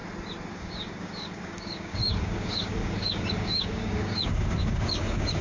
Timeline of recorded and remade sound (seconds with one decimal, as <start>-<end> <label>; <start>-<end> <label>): 0.0-0.5 recorded; 0.5-5.4 remade

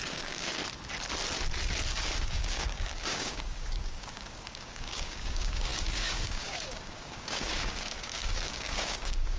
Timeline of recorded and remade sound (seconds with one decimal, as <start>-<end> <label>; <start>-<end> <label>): 0.0-0.6 remade; 0.6-2.2 recorded; 2.2-9.4 remade

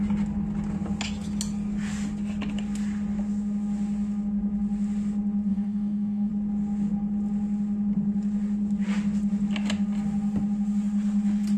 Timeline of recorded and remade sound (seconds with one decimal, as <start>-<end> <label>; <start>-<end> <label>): 0.0-5.5 recorded; 5.5-6.3 remade; 6.3-11.6 recorded

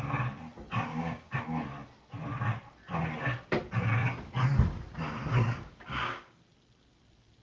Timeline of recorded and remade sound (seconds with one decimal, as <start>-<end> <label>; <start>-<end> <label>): 0.0-0.9 recorded; 0.9-1.4 remade; 1.4-5.3 recorded; 5.3-6.4 remade; 6.4-7.4 recorded

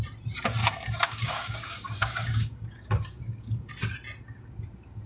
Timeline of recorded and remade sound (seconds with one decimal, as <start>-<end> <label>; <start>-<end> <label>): 0.0-0.6 recorded; 0.6-3.7 remade; 3.7-5.1 recorded